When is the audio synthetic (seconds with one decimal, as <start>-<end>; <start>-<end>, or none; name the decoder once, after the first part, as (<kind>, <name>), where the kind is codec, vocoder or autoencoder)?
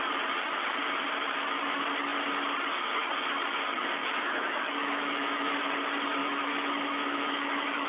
4.0-5.3 (autoencoder, DAC-VAE); 6.2-7.9